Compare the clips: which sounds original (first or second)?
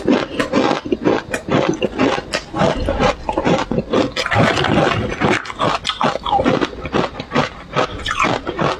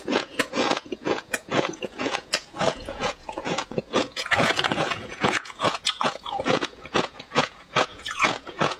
first